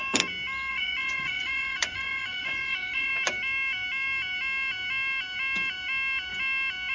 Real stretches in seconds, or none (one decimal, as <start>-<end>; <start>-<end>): 0.0-0.7; 3.1-6.9